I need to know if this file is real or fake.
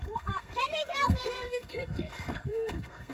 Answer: fake